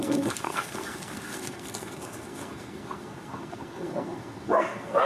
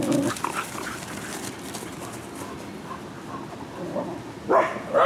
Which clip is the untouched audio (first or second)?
second